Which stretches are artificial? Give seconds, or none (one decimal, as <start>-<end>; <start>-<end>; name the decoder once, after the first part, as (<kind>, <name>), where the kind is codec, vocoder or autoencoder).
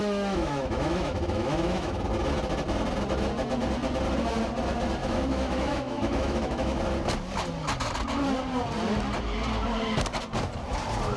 0.0-2.0 (autoencoder, DAC-VAE); 5.0-6.8